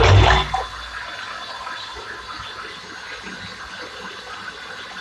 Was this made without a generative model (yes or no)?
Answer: yes